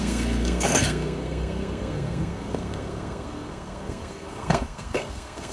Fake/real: fake